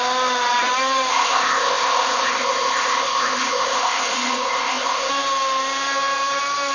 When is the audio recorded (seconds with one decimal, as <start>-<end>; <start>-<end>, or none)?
0.0-1.1; 5.1-6.7